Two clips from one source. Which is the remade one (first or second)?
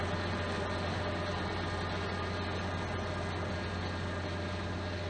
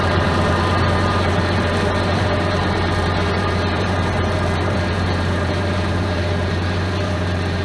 second